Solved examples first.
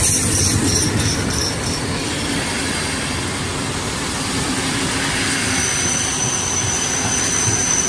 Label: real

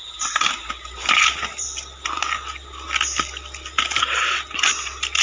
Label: real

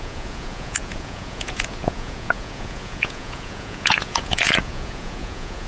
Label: fake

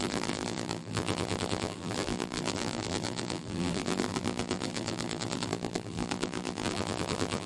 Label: fake